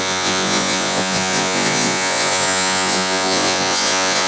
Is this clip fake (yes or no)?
yes